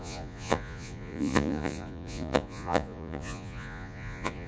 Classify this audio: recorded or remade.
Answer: remade